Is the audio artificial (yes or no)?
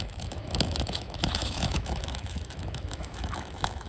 yes